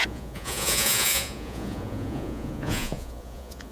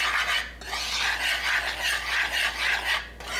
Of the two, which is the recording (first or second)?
second